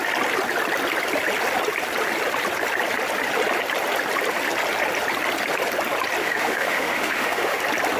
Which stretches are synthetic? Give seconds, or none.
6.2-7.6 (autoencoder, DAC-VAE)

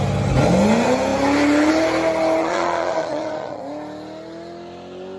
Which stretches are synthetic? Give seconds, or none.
2.4-3.6 (vocoder, Vocos)

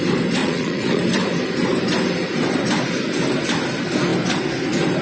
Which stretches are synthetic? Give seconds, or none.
0.4-1.0 (vocoder, Vocos)

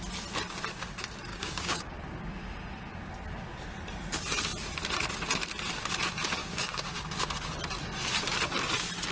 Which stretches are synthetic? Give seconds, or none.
1.3-2.0 (codec, DAC); 6.4-7.0

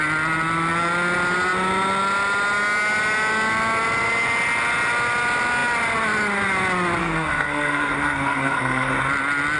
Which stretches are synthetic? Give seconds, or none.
7.0-8.9 (codec, SNAC)